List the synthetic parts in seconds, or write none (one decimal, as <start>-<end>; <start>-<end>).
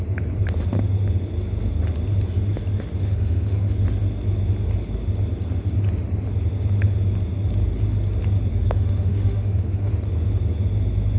3.0-3.7; 8.5-9.9